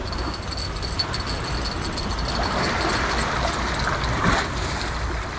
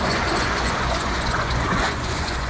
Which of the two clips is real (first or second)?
first